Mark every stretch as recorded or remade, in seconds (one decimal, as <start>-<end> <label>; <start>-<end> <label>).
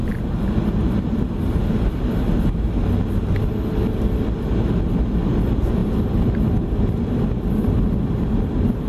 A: 0.0-8.9 recorded